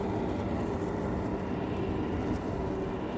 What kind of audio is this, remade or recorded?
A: recorded